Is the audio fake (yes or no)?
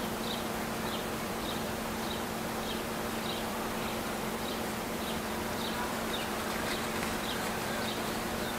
yes